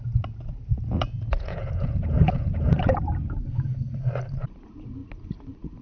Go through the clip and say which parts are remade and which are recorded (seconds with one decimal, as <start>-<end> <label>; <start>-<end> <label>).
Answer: 0.0-0.9 recorded; 0.9-3.1 remade; 3.1-5.8 recorded